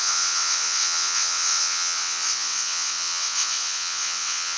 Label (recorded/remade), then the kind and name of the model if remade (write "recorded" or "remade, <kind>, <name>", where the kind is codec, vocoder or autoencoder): remade, vocoder, WaveNeXt